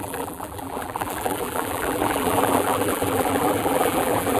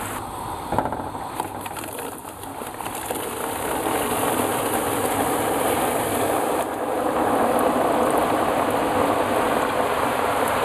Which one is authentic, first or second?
second